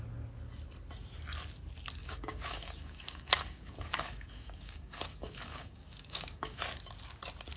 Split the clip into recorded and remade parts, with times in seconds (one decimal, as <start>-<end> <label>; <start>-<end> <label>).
0.0-2.0 recorded; 2.0-6.6 remade; 6.6-7.6 recorded